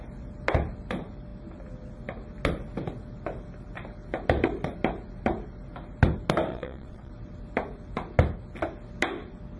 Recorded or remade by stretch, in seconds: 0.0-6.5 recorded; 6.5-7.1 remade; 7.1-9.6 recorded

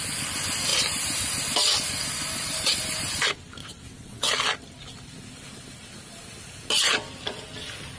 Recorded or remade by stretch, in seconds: 0.0-3.6 recorded; 3.6-4.3 remade; 4.3-8.0 recorded

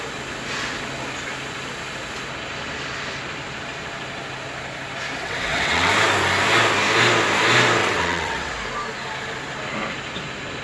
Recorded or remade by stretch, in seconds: 0.0-5.2 recorded; 5.2-5.9 remade; 5.9-7.8 recorded; 7.8-8.5 remade; 8.5-10.6 recorded

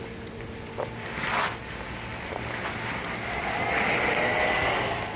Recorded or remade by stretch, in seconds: 0.0-5.2 recorded

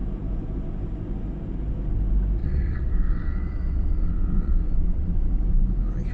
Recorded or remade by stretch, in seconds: 0.0-2.4 recorded; 2.4-5.3 remade; 5.3-6.1 recorded